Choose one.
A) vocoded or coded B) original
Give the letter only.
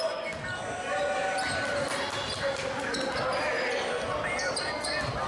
B